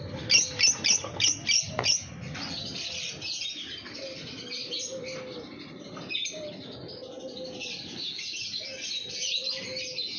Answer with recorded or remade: recorded